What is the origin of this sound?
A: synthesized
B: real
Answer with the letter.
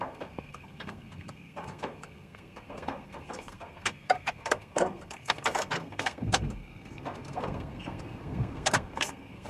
A